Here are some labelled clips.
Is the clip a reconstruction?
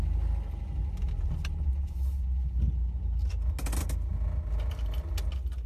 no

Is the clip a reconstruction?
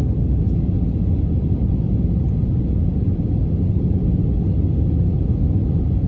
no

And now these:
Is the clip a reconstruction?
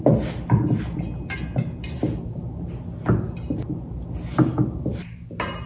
no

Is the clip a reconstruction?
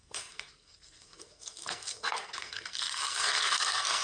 yes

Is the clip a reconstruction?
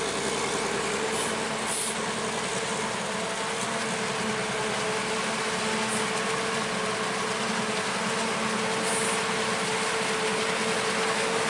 no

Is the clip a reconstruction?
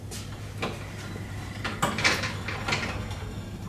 no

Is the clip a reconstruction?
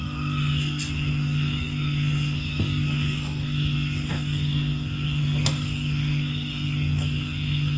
yes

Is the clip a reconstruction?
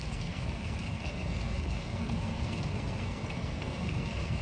yes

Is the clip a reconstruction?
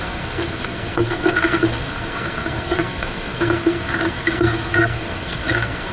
yes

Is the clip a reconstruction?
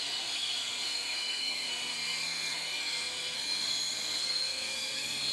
yes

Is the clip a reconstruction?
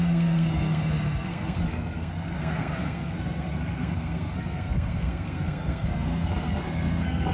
yes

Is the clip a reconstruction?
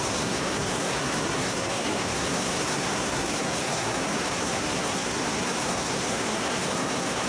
yes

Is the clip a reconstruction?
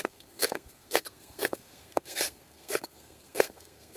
yes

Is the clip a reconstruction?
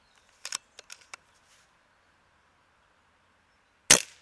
no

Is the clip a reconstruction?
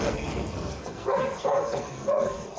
yes